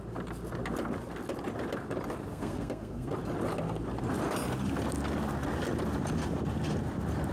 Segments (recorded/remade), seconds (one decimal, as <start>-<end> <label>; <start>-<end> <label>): 0.0-2.3 recorded; 2.3-3.1 remade; 3.1-7.3 recorded